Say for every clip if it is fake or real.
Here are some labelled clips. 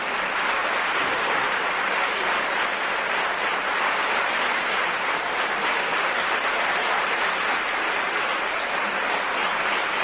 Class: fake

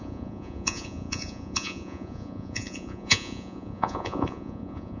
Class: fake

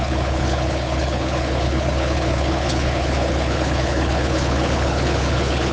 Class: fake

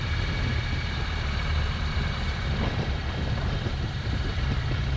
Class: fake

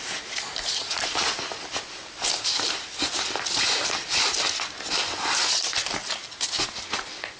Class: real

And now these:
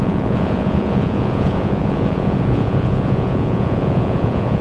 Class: fake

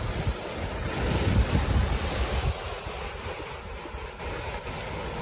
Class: real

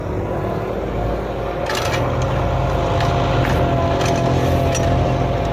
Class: real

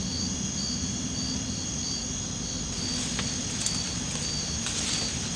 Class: real